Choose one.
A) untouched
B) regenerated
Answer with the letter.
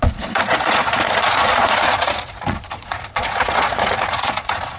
B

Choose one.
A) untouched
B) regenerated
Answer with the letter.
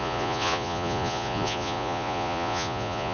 B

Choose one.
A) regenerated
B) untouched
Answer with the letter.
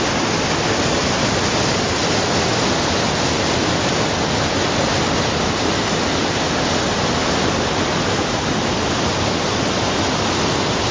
B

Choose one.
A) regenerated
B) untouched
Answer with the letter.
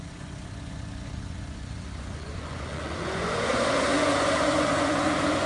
A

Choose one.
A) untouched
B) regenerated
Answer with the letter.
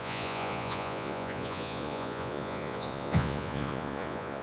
B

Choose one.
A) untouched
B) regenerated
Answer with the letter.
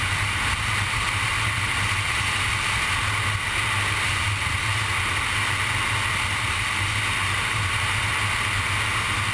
A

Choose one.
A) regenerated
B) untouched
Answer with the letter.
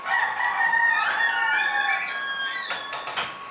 B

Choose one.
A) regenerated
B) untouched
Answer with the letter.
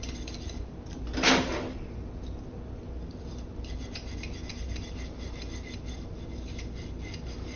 B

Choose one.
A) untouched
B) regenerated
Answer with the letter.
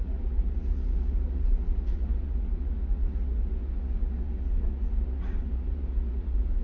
B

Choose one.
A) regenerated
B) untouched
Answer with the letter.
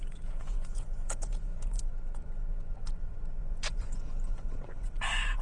A